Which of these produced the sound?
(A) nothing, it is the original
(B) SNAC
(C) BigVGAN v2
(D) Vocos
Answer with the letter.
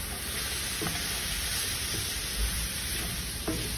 A